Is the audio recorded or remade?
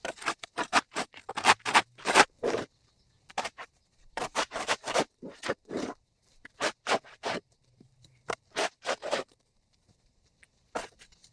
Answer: remade